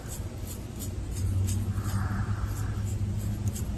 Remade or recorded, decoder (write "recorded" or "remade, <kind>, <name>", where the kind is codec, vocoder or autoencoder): recorded